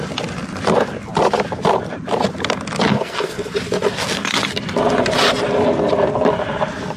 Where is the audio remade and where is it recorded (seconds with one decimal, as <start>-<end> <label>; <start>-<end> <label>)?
0.0-2.9 recorded; 2.9-3.5 remade; 3.5-7.0 recorded